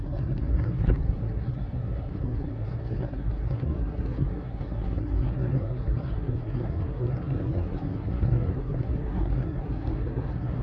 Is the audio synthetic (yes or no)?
yes